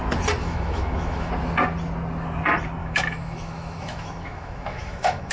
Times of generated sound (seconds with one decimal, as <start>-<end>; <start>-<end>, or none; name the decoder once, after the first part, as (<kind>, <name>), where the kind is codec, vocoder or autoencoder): 0.4-1.3 (autoencoder, DAC-VAE); 2.8-5.3